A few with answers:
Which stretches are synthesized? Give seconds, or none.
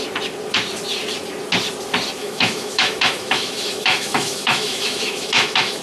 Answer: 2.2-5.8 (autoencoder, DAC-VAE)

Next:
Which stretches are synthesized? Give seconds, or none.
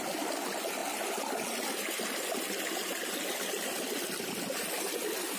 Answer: none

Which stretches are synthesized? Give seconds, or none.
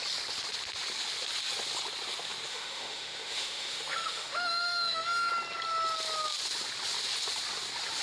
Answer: 2.5-5.3 (autoencoder, DAC-VAE)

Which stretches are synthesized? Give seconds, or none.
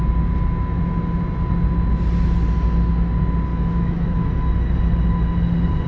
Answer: 3.5-4.3 (autoencoder, DAC-VAE)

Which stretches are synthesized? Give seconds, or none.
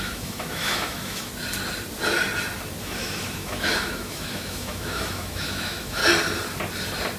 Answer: 0.0-1.3 (autoencoder, DAC-VAE); 2.8-6.0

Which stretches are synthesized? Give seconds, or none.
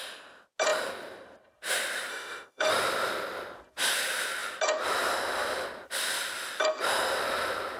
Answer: 2.1-2.7 (autoencoder, DAC-VAE)